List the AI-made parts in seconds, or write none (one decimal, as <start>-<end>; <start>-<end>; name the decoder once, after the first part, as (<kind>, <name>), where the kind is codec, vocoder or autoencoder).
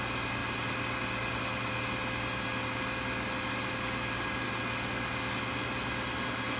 none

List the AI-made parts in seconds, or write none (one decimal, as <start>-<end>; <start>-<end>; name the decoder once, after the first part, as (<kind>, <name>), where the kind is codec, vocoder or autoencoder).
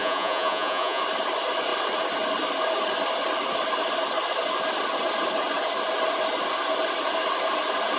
0.0-1.0 (vocoder, Vocos)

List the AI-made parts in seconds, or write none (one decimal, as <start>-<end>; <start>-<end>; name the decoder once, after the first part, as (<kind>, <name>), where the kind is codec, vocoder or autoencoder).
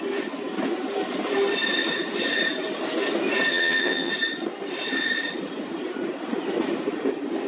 3.5-4.1 (vocoder, HiFi-GAN)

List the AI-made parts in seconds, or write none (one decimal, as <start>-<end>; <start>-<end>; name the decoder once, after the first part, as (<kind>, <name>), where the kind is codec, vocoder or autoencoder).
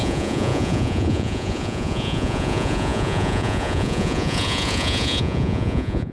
0.0-6.1 (vocoder, Vocos)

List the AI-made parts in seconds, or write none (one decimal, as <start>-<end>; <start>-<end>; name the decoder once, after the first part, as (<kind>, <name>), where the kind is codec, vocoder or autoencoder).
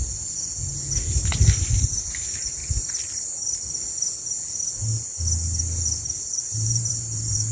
1.1-2.6 (vocoder, BigVGAN v2); 6.0-7.5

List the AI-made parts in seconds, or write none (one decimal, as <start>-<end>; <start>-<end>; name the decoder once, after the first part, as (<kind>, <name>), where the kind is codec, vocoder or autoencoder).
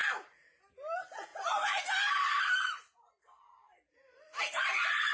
1.3-4.4 (vocoder, BigVGAN v2)